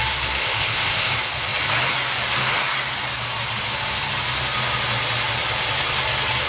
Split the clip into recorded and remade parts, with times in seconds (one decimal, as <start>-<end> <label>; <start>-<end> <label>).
0.0-0.4 recorded; 0.4-1.1 remade; 1.1-6.5 recorded